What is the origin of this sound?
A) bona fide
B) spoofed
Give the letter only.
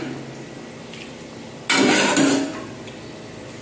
A